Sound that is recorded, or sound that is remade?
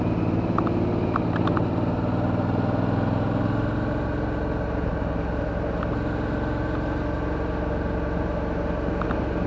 recorded